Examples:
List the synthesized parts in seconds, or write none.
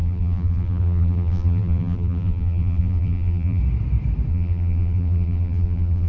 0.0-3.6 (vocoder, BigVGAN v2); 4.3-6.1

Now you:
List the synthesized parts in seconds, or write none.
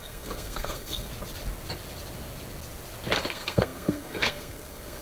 0.0-1.1 (codec, SNAC); 3.3-5.0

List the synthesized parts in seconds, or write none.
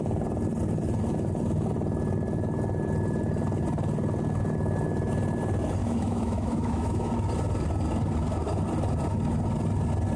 5.8-7.1 (autoencoder, DAC-VAE)